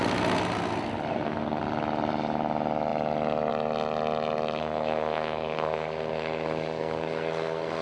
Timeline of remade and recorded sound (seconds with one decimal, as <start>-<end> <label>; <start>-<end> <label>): 0.0-1.1 recorded; 1.1-1.6 remade; 1.6-4.6 recorded; 4.6-7.8 remade